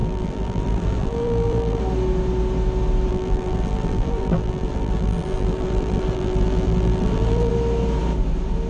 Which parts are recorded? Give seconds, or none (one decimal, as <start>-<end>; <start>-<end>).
1.8-3.1; 7.5-8.7